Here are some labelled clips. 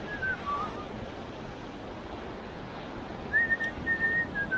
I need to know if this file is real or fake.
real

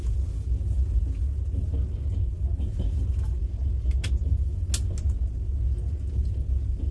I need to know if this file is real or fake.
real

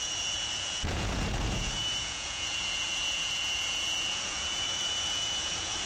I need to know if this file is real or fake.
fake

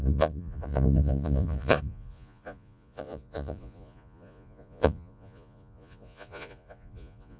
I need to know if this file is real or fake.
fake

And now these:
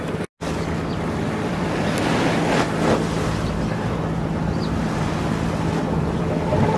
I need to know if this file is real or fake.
real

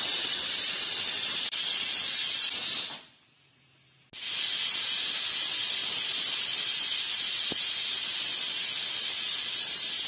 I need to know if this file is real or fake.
real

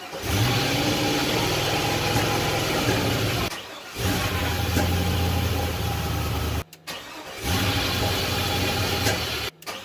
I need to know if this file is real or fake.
real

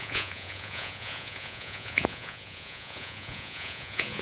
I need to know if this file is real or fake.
fake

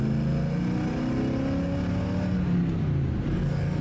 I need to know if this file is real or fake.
real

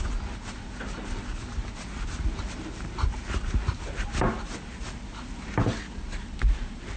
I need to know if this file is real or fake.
real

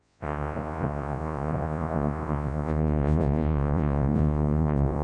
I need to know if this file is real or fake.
fake